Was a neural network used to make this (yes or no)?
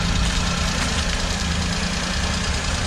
no